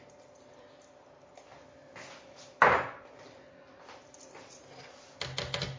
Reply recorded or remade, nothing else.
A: recorded